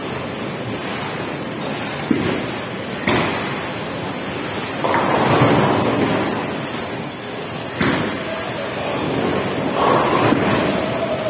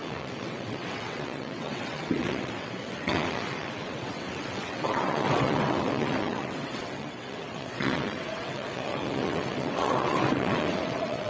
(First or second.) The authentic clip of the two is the first